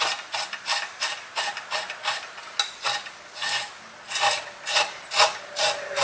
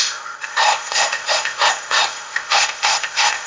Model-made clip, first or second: second